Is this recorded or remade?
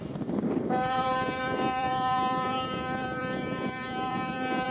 remade